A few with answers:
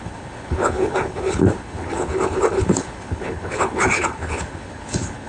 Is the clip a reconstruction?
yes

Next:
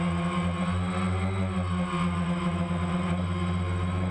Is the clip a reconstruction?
no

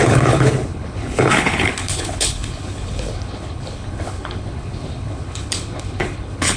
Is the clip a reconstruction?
yes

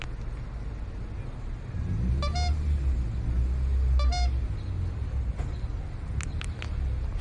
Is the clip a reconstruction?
no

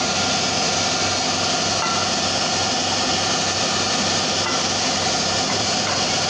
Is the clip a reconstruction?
no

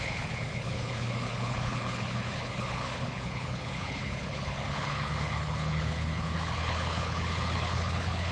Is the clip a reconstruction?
yes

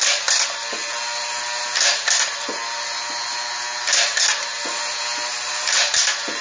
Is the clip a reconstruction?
no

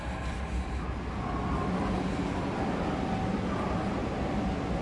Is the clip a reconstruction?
no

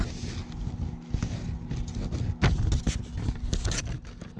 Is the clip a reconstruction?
no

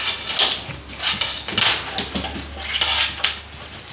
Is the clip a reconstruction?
no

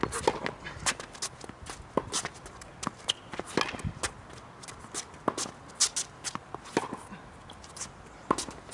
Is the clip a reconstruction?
no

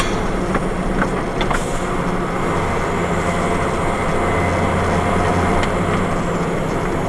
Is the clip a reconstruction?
no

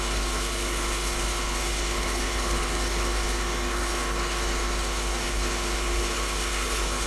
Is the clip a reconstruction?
yes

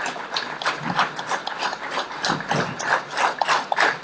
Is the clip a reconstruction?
no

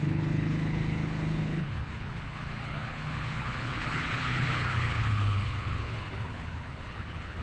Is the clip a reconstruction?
yes